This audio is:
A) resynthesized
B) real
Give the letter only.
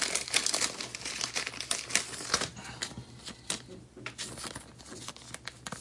B